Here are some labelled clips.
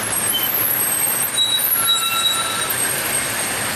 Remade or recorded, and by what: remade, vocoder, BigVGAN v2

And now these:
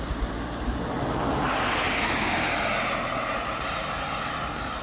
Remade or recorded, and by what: recorded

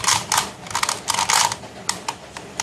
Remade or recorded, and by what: recorded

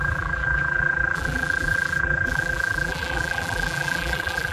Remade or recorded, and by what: remade, vocoder, BigVGAN v2